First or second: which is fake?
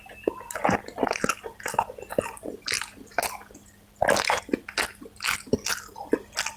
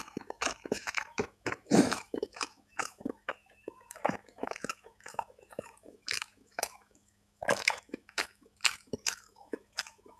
second